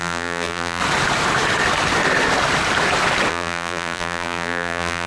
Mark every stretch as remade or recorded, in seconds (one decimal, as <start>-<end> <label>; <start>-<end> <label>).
0.0-0.8 remade; 0.8-3.3 recorded; 3.3-5.1 remade